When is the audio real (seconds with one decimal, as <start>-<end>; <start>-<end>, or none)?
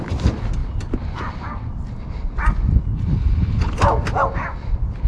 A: 0.0-2.9; 3.7-5.1